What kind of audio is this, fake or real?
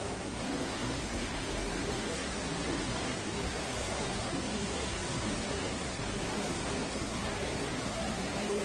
fake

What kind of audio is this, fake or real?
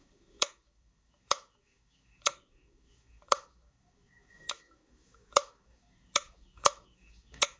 fake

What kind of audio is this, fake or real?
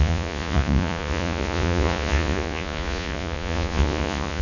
fake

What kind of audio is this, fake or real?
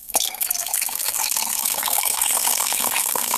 fake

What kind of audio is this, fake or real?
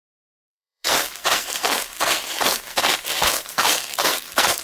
fake